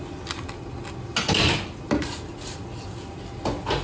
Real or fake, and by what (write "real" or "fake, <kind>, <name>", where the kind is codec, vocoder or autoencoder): real